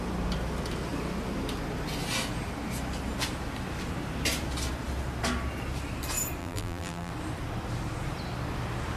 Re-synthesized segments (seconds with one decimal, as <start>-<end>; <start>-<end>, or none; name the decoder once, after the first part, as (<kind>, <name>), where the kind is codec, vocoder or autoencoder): 6.4-7.1 (vocoder, BigVGAN v2)